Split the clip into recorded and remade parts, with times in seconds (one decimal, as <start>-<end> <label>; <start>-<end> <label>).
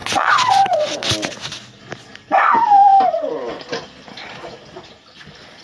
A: 0.0-1.1 remade; 1.1-5.6 recorded